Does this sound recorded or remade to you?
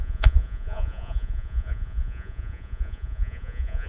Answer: remade